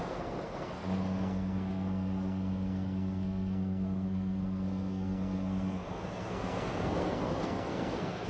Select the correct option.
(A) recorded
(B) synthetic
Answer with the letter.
B